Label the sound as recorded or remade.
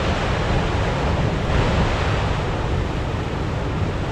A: recorded